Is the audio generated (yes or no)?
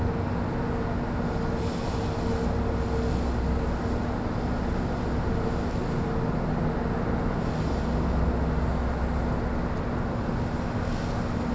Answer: no